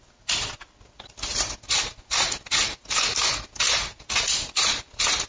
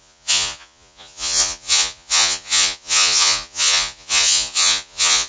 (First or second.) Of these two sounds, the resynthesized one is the second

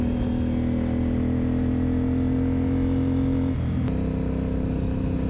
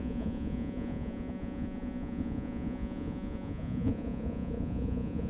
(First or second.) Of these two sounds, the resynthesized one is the second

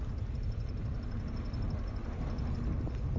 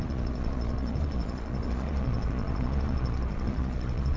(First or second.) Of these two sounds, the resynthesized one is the second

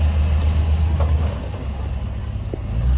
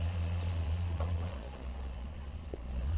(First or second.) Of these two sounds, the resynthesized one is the second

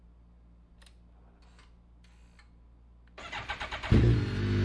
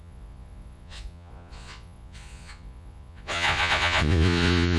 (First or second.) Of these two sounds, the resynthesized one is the second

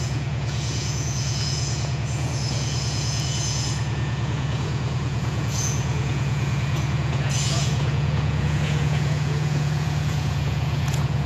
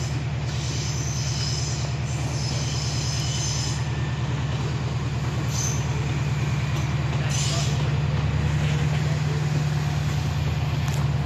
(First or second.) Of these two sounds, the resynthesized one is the first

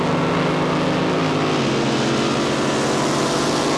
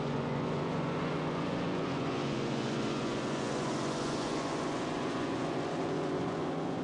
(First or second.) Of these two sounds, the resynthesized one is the second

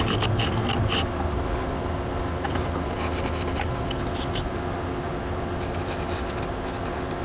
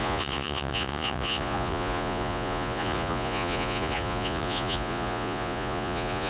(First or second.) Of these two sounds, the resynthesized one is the second